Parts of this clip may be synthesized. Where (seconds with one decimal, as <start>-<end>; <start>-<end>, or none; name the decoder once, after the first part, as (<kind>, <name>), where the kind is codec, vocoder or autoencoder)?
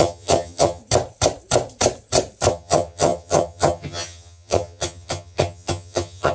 0.0-0.8 (vocoder, HiFi-GAN); 2.5-6.3